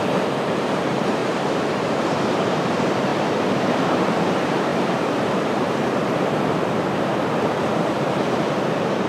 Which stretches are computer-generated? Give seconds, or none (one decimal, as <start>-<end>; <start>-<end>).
0.0-3.1; 3.7-9.1